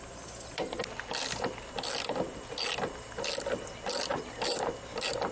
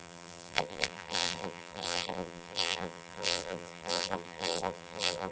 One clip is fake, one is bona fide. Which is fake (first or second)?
second